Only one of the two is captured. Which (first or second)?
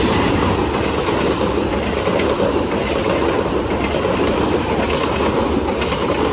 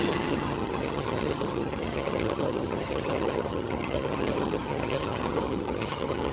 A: first